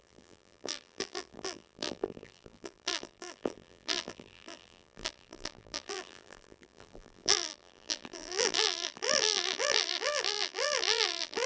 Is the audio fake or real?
fake